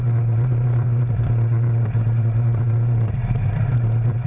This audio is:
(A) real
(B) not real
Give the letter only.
B